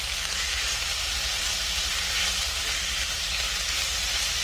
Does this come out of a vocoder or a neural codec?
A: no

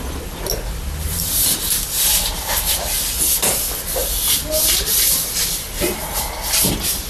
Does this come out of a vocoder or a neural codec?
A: no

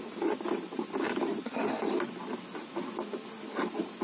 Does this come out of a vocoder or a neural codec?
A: no